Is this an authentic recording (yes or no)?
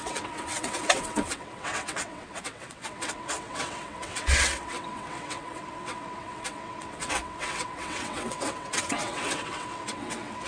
no